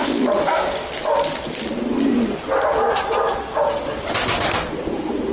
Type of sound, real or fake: real